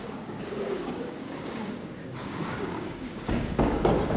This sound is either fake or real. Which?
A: fake